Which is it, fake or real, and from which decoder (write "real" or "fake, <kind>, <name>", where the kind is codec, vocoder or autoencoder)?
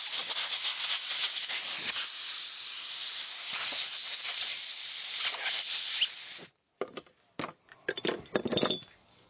real